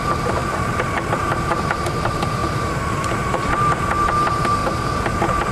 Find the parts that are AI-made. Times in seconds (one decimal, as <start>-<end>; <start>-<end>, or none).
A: 0.0-4.6